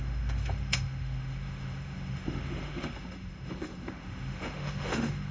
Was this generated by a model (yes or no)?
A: yes